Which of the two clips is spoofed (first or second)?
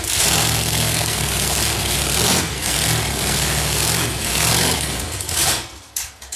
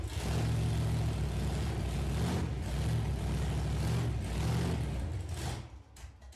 first